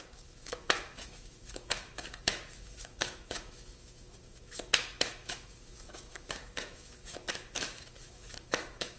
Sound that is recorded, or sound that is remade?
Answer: remade